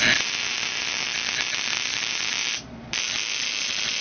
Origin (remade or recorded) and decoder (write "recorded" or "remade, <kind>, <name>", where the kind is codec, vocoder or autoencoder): recorded